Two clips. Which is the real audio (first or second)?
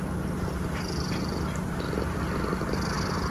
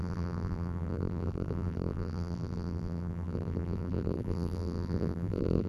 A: first